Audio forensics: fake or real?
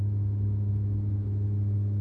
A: real